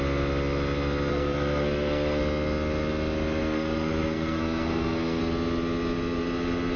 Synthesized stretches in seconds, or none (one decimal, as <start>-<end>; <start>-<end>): 1.1-2.2; 3.4-5.2